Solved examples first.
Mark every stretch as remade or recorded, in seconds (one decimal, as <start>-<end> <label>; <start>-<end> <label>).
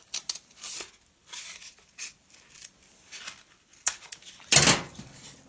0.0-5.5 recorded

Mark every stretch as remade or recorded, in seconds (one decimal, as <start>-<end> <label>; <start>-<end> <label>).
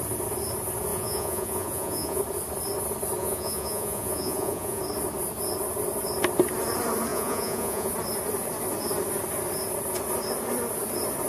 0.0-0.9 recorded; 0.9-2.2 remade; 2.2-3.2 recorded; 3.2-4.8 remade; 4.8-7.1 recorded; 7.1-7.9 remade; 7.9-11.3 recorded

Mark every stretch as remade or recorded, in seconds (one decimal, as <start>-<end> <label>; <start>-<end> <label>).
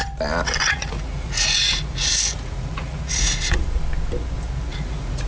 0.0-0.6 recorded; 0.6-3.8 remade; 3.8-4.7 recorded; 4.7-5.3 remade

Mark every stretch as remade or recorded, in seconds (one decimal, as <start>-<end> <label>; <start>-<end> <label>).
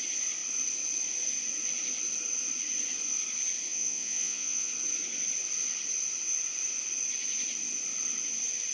0.0-3.7 recorded; 3.7-4.7 remade; 4.7-8.7 recorded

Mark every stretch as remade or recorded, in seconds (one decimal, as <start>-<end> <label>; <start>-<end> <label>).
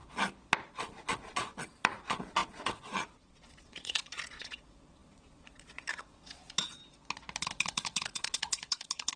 0.0-0.8 recorded; 0.8-6.8 remade; 6.8-7.4 recorded; 7.4-9.2 remade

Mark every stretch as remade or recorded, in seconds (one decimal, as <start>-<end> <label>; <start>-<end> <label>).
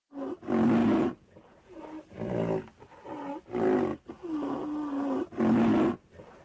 0.0-0.8 recorded; 0.8-1.8 remade; 1.8-6.4 recorded